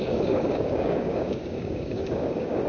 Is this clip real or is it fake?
fake